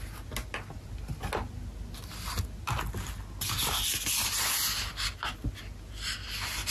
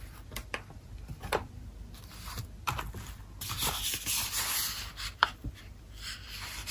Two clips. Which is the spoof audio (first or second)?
second